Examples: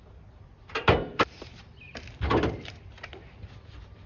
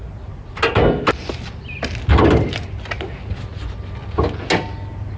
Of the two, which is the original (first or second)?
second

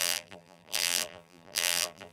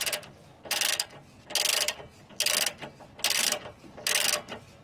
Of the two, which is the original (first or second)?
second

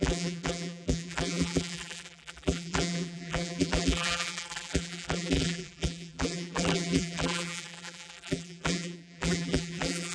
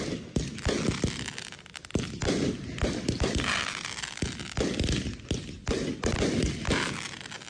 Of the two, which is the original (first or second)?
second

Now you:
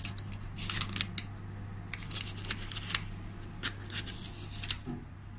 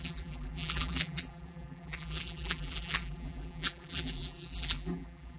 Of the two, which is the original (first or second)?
first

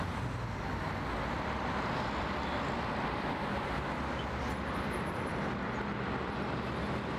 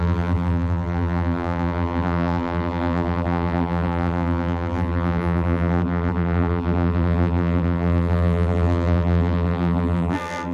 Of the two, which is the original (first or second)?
first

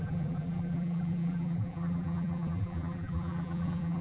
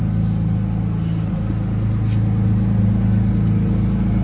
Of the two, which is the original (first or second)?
second